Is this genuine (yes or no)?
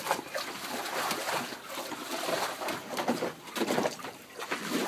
no